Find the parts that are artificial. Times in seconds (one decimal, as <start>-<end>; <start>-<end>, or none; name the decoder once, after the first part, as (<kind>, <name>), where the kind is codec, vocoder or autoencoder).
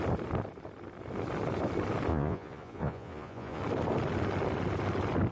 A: 2.1-3.6 (vocoder, Vocos)